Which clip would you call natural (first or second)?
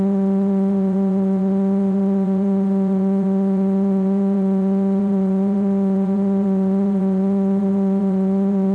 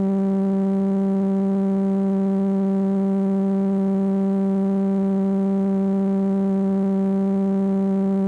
second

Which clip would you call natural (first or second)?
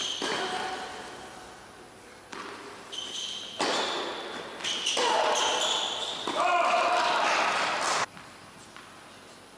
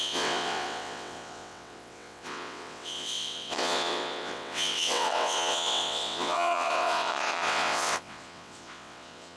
first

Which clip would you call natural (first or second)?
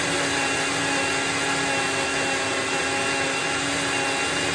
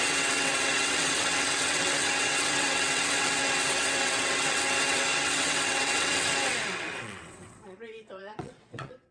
first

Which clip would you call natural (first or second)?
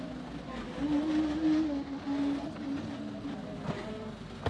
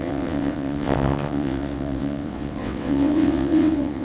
first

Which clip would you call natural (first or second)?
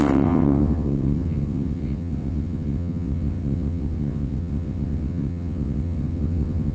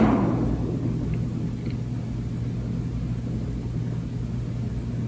second